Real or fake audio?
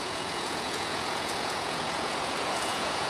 fake